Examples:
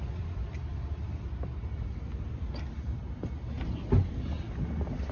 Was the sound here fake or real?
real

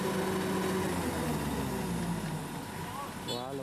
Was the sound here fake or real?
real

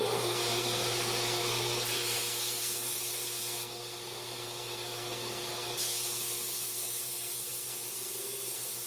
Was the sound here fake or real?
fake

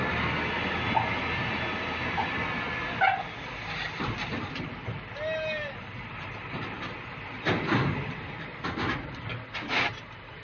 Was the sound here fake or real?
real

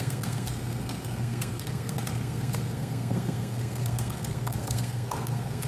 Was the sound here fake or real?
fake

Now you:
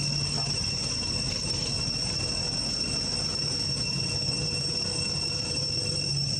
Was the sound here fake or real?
real